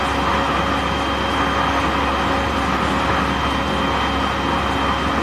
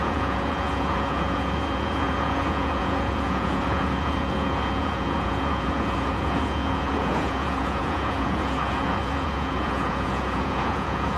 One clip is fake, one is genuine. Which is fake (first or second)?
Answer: second